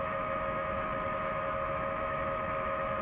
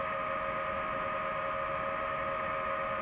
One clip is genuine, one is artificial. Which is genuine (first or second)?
second